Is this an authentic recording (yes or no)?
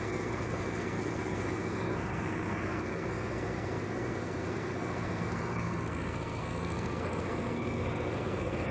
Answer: no